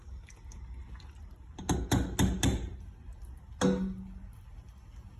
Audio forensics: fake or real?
real